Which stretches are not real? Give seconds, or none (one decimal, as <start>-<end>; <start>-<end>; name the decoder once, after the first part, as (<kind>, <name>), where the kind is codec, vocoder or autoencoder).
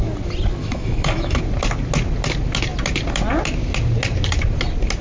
0.6-1.4 (autoencoder, DAC-VAE)